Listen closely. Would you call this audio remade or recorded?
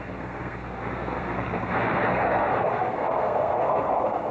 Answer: remade